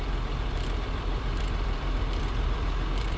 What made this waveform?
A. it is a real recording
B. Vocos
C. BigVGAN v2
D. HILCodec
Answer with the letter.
C